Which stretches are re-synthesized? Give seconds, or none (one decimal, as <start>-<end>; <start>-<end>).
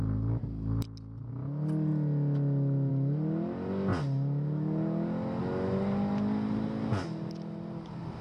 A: none